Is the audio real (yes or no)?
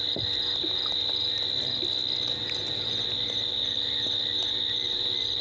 yes